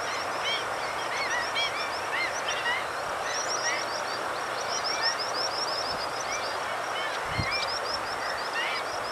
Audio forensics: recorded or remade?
recorded